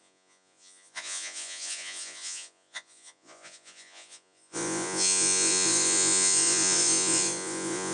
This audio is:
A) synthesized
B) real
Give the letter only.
A